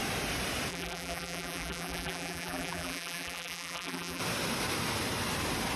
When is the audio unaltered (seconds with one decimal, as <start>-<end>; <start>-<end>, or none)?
0.0-0.7; 4.2-5.8